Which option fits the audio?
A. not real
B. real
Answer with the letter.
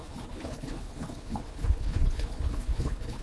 A